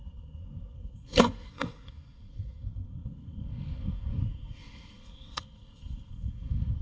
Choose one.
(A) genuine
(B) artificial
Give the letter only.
B